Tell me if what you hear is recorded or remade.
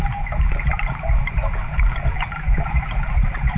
recorded